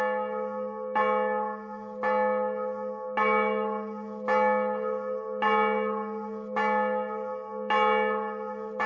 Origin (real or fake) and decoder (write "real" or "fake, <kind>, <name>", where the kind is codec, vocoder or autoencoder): real